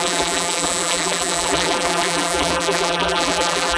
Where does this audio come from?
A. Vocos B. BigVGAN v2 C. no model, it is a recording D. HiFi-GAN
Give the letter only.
B